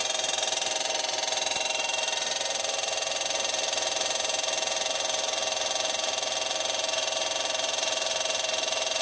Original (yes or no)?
yes